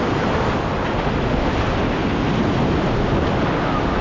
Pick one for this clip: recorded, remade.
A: recorded